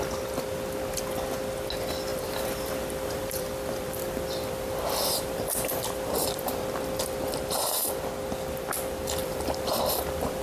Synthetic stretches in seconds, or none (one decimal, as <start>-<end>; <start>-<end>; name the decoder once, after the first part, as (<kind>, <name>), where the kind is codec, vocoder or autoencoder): 2.1-6.6 (vocoder, BigVGAN v2); 9.2-10.4